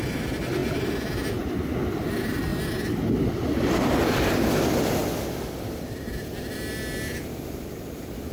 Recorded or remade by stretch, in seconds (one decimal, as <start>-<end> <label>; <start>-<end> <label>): 0.0-8.3 recorded